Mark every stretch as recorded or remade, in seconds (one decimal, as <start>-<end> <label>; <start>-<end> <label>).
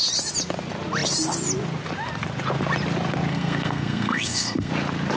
0.0-3.3 recorded; 3.3-4.7 remade; 4.7-5.2 recorded